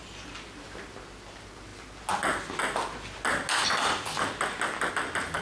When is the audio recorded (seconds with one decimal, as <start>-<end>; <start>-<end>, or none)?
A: 0.0-5.4